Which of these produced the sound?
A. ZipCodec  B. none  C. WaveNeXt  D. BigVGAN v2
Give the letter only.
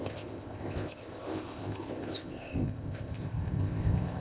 A